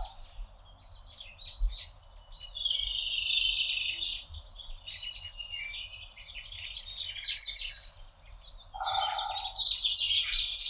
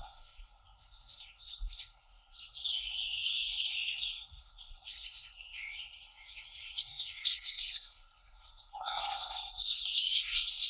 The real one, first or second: first